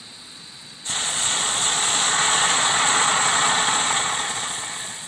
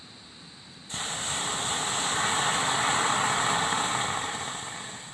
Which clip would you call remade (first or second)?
first